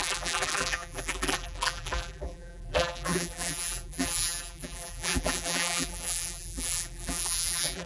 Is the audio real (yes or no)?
no